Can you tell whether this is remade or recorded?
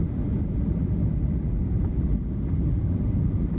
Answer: remade